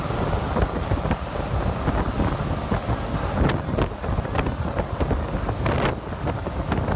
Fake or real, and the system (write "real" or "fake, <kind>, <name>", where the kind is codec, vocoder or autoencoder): real